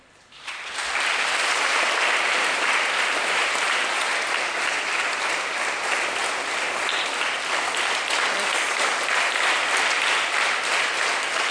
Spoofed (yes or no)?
yes